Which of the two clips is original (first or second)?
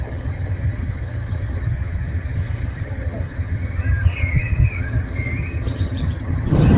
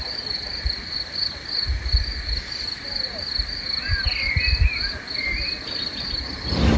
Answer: second